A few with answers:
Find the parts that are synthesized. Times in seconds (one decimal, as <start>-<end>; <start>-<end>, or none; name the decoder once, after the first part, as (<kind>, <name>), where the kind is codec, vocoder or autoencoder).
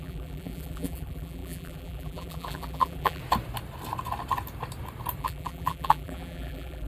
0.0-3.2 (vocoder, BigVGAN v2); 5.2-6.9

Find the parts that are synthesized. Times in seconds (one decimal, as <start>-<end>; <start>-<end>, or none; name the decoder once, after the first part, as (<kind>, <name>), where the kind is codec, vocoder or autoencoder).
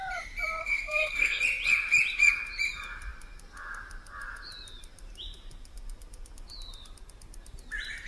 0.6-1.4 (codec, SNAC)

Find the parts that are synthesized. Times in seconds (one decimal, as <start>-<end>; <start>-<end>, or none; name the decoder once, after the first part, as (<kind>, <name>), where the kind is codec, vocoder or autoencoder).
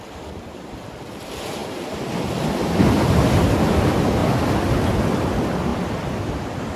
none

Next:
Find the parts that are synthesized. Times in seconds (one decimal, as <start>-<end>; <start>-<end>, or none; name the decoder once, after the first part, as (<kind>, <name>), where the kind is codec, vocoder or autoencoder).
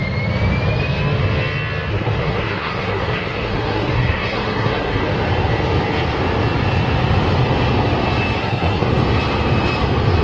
1.9-5.0 (codec, SNAC); 8.4-8.9